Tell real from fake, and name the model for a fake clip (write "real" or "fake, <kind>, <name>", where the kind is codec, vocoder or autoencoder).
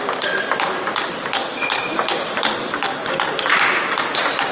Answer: real